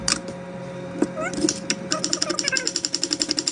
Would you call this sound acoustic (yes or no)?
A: yes